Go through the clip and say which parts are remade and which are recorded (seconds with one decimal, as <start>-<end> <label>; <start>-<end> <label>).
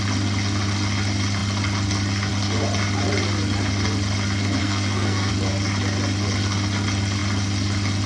0.0-4.6 recorded; 4.6-5.3 remade; 5.3-8.1 recorded